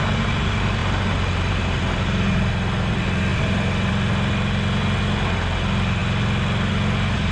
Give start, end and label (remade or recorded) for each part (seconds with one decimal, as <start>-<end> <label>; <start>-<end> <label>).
0.0-3.3 recorded; 3.3-3.9 remade; 3.9-7.3 recorded